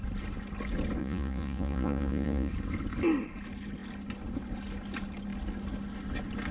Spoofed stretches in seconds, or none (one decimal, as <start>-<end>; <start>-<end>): 1.0-2.5